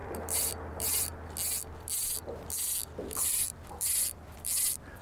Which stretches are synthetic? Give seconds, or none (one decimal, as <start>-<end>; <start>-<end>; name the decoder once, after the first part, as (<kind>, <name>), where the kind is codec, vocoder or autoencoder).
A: 0.0-1.1 (vocoder, BigVGAN v2); 3.1-5.0